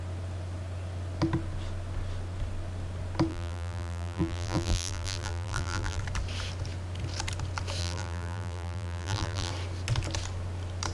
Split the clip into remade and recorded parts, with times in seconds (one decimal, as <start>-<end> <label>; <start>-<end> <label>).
0.0-3.3 recorded; 3.3-6.0 remade; 6.0-7.8 recorded; 7.8-9.5 remade; 9.5-10.9 recorded